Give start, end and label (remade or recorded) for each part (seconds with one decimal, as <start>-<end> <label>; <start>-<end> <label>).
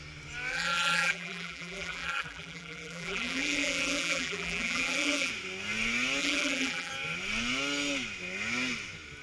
0.0-0.5 recorded; 0.5-5.3 remade; 5.3-6.2 recorded; 6.2-6.9 remade; 6.9-9.2 recorded